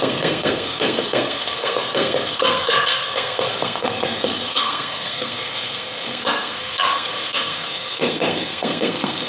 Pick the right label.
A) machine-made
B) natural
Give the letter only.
A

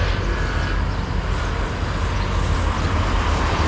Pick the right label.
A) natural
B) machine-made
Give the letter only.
A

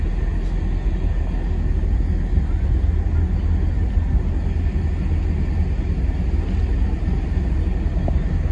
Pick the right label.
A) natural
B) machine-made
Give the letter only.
A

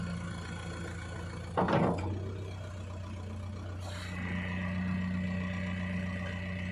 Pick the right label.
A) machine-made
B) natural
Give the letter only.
B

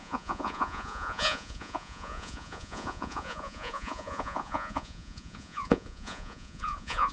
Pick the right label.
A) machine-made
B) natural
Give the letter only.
A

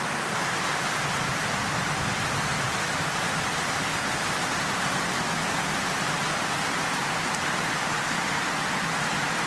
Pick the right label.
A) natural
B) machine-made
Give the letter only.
B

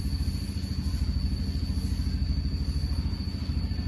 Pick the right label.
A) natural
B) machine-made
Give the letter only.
A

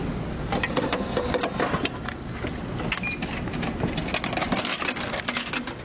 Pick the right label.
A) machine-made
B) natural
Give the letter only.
B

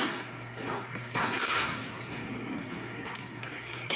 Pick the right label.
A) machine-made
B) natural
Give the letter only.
A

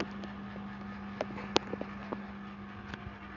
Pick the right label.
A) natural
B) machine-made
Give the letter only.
A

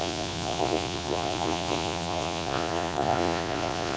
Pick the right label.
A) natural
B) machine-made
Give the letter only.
B